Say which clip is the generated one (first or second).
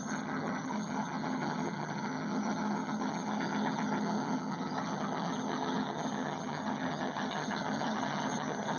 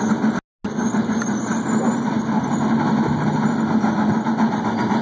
first